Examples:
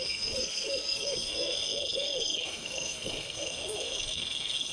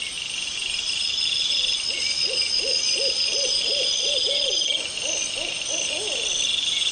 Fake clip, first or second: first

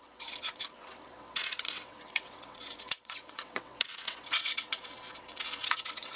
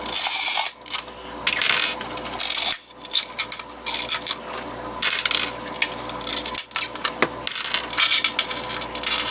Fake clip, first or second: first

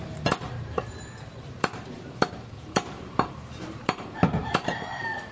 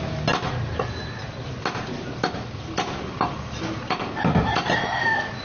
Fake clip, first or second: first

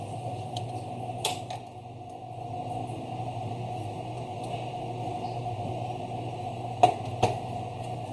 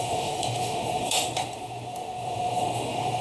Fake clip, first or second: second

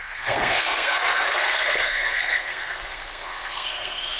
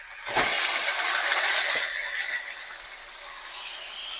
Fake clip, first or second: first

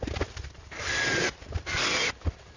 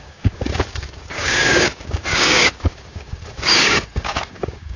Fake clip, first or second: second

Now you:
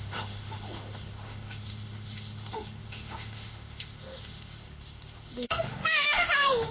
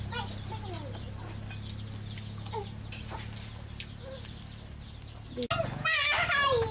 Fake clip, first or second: first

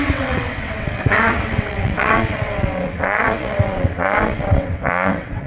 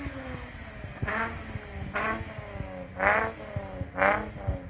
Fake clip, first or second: first